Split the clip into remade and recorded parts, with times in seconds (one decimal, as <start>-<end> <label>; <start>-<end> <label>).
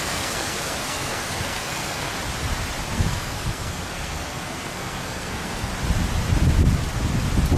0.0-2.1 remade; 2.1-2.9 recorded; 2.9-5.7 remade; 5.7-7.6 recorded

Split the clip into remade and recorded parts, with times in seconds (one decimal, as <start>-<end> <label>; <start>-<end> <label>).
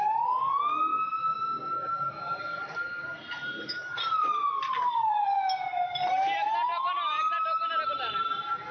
0.0-2.3 recorded; 2.3-6.1 remade; 6.1-8.7 recorded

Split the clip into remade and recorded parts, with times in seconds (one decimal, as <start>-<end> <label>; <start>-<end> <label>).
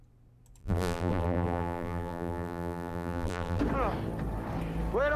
0.0-0.6 recorded; 0.6-3.6 remade; 3.6-5.2 recorded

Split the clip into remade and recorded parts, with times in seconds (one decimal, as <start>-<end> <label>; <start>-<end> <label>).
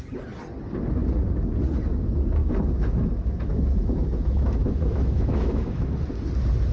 0.0-2.4 recorded; 2.4-6.0 remade; 6.0-6.7 recorded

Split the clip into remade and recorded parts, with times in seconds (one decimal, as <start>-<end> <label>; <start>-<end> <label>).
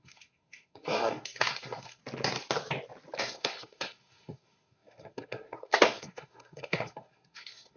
0.0-2.0 remade; 2.0-3.2 recorded; 3.2-7.8 remade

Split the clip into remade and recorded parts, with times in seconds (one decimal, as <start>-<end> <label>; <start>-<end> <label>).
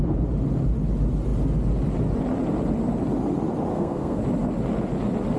0.0-3.7 recorded; 3.7-4.2 remade; 4.2-5.4 recorded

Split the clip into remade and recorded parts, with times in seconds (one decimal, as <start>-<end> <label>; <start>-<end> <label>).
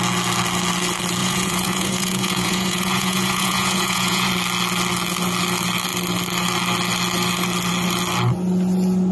0.0-1.2 recorded; 1.2-4.3 remade; 4.3-9.1 recorded